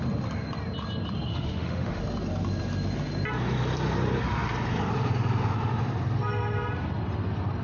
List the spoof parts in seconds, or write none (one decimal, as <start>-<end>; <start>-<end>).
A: 1.3-2.0